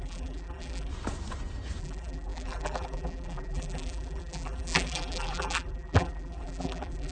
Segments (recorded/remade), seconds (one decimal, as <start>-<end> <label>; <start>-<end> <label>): 0.0-0.9 remade; 0.9-1.8 recorded; 1.8-7.1 remade